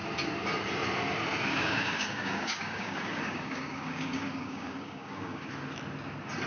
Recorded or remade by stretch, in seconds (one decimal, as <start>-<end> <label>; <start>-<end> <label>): 0.0-1.6 recorded; 1.6-5.5 remade; 5.5-6.5 recorded